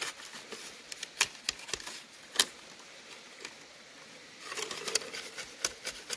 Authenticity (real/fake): real